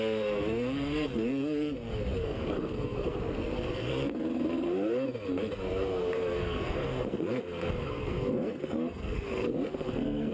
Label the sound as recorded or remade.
remade